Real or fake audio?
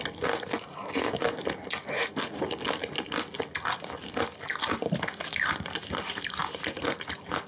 real